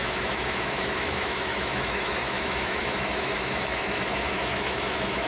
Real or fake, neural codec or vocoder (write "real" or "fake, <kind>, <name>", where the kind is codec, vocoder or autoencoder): fake, autoencoder, DAC-VAE